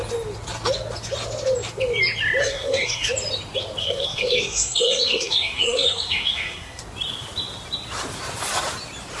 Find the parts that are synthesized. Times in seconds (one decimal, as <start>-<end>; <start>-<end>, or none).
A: 2.4-3.1; 3.8-6.8